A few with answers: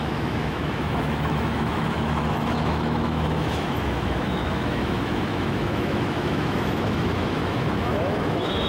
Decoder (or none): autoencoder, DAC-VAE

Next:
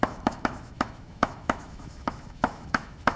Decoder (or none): autoencoder, DAC-VAE